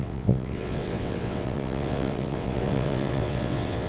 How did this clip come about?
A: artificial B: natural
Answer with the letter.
A